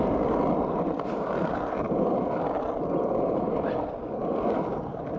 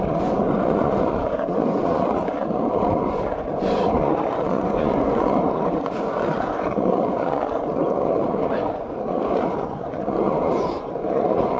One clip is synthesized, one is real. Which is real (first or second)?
first